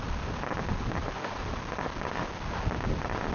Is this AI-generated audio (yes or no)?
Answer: no